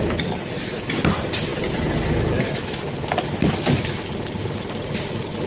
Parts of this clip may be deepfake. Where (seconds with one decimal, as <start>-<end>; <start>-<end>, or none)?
none